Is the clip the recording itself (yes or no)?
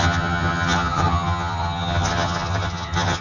no